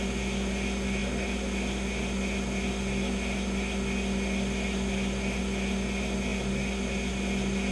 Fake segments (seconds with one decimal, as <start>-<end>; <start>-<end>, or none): none